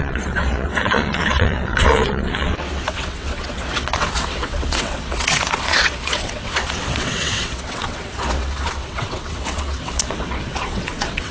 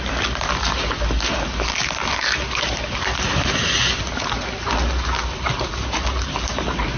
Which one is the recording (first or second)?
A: second